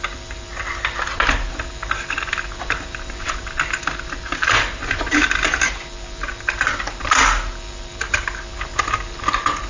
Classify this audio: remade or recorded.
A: recorded